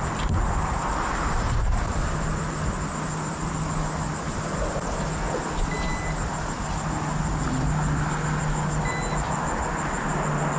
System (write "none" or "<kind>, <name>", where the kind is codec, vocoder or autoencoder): none